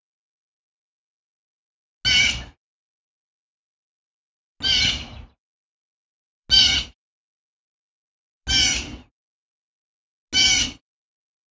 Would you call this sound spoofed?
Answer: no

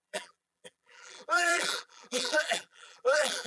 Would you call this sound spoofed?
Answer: yes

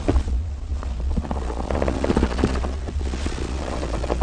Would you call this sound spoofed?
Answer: yes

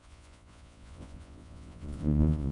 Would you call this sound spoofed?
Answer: yes